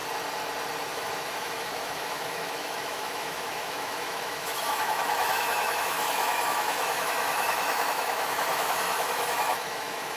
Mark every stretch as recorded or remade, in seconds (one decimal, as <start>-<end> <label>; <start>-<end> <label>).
0.0-0.9 recorded; 0.9-10.2 remade